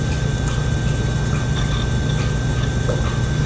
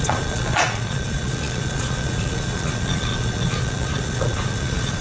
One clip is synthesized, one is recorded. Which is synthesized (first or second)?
second